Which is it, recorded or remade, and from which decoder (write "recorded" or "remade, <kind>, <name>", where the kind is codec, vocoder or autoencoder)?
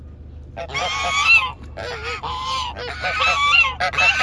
recorded